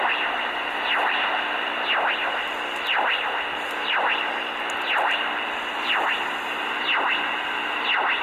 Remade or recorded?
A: recorded